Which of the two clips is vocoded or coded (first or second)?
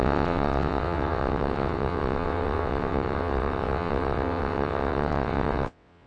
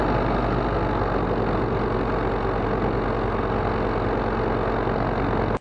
first